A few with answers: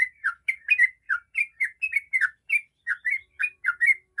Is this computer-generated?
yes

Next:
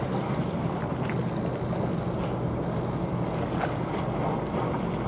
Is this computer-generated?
no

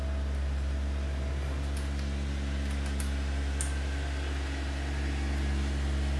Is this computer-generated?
no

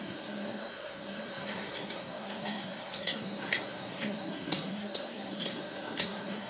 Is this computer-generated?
yes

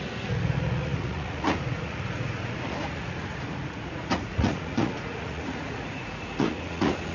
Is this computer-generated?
yes